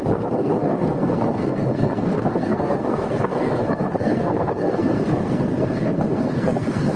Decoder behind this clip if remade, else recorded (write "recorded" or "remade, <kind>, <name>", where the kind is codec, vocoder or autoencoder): remade, codec, SNAC